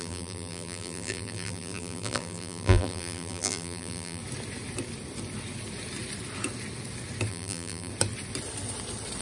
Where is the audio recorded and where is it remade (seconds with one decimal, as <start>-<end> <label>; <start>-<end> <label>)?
0.0-4.2 remade; 4.2-7.3 recorded; 7.3-7.9 remade; 7.9-9.2 recorded